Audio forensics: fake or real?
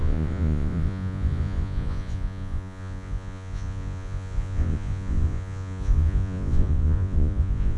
fake